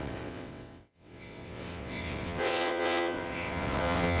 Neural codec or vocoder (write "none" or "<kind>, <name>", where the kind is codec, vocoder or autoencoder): vocoder, WaveNeXt